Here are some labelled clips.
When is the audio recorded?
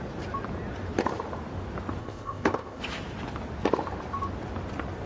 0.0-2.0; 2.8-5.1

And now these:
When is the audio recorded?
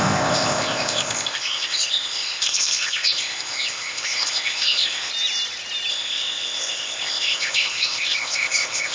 5.1-5.9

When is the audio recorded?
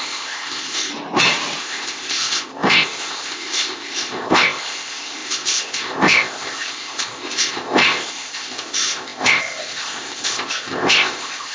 0.9-1.6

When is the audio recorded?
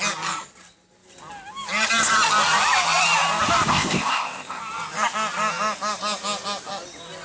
0.0-3.7; 4.6-7.2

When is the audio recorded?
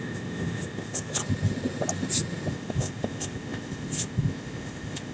1.2-2.5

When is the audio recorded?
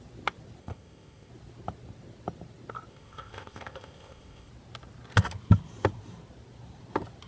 0.0-0.6; 1.3-2.9; 4.5-7.3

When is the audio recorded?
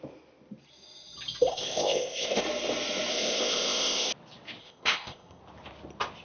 0.0-1.5; 2.4-3.1; 4.1-4.6; 5.4-6.2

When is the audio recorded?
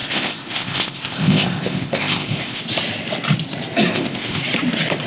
2.6-3.9; 4.4-5.1